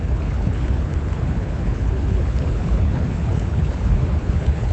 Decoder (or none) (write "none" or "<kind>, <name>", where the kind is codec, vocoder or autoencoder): codec, HILCodec